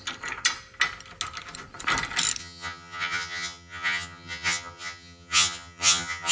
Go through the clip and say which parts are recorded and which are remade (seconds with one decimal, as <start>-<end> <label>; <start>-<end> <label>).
0.0-2.4 recorded; 2.4-6.3 remade